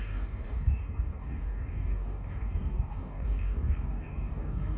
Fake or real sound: fake